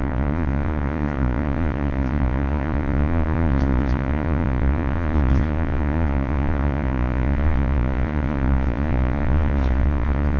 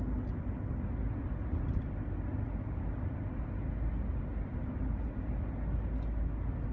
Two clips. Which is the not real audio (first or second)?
first